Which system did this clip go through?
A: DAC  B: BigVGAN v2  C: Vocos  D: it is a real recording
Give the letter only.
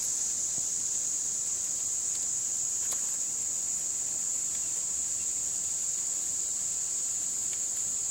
D